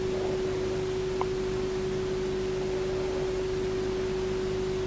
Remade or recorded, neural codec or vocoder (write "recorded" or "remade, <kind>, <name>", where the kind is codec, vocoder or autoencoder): recorded